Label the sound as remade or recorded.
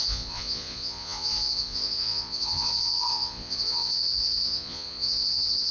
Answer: remade